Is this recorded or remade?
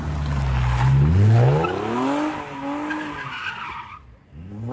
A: recorded